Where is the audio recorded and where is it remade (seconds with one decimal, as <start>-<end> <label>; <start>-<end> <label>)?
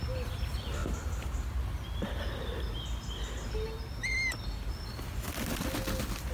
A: 0.0-6.3 recorded